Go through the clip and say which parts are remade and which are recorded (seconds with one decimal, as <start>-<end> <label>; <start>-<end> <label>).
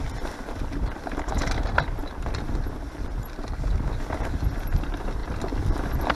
0.0-6.1 recorded